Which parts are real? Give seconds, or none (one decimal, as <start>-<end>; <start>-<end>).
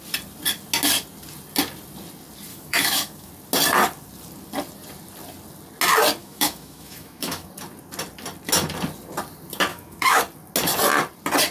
0.0-2.5; 3.3-6.2; 7.5-9.7; 10.2-11.5